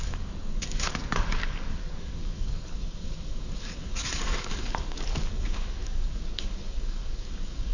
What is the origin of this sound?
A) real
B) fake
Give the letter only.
B